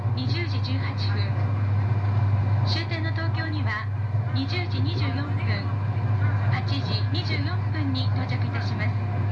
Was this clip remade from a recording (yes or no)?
no